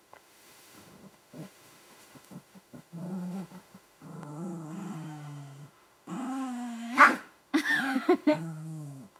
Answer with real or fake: fake